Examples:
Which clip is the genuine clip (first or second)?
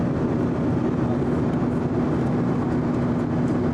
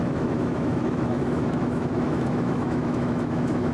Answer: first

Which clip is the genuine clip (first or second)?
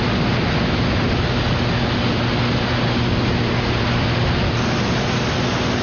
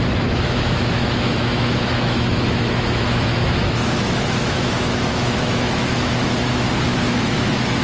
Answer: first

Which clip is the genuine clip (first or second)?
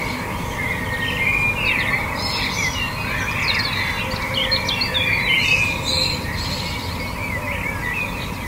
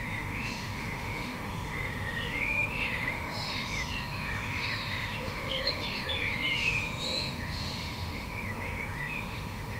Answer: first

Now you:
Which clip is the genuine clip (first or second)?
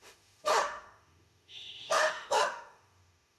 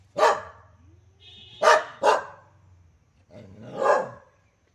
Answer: second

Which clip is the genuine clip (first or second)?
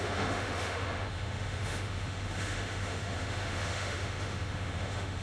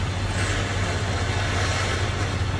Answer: second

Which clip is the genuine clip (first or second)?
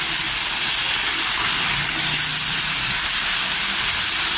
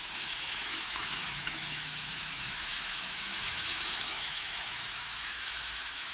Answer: first